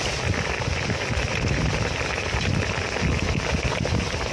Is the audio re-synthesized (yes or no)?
no